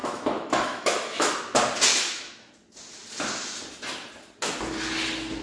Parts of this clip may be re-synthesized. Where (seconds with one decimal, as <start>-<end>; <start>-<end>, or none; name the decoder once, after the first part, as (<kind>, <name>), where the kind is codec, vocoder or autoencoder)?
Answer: 0.0-1.3 (autoencoder, DAC-VAE); 1.9-2.5